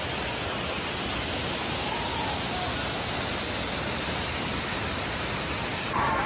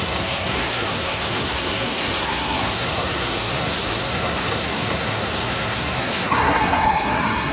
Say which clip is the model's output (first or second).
second